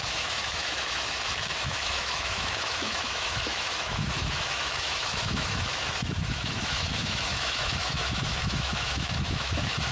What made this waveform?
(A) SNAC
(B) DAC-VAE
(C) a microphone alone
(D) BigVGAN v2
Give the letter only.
B